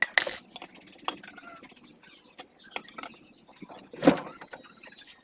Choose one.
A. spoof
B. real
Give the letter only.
B